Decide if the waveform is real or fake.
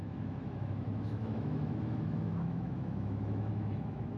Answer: fake